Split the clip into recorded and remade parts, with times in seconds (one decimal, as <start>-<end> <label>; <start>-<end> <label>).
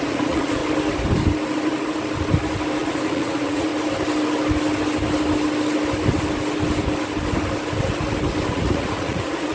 0.0-0.6 remade; 0.6-2.8 recorded; 2.8-3.7 remade; 3.7-8.5 recorded; 8.5-9.5 remade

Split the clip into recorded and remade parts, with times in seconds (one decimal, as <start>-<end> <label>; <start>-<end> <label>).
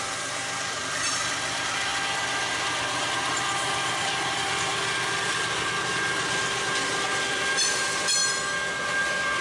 0.0-1.9 remade; 1.9-3.1 recorded; 3.1-4.7 remade; 4.7-5.4 recorded; 5.4-8.2 remade; 8.2-9.0 recorded; 9.0-9.4 remade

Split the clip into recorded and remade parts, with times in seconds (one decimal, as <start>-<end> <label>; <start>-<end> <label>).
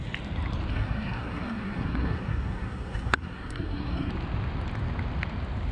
0.0-0.7 recorded; 0.7-4.1 remade; 4.1-5.7 recorded